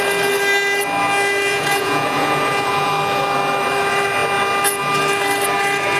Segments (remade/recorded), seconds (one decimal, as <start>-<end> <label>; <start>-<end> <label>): 0.0-1.5 recorded; 1.5-2.9 remade; 2.9-6.0 recorded